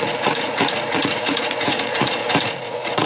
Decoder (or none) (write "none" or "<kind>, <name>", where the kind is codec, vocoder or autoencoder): vocoder, Vocos